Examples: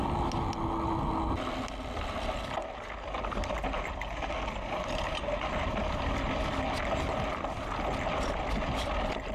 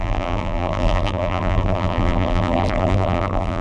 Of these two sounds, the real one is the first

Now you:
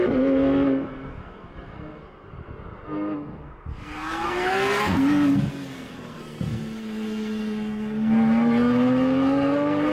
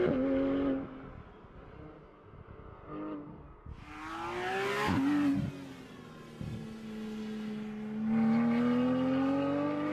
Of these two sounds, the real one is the second